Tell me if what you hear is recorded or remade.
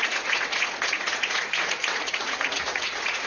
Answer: remade